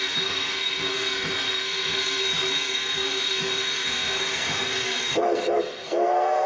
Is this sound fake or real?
fake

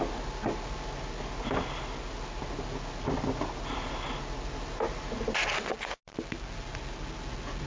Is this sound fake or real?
real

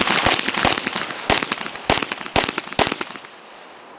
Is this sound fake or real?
real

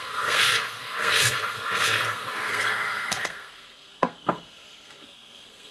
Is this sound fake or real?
fake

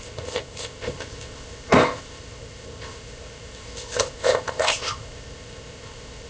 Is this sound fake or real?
fake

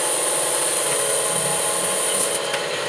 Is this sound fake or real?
real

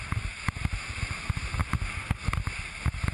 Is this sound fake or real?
real